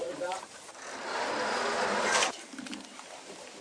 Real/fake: fake